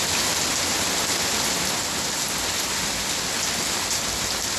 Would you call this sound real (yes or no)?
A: yes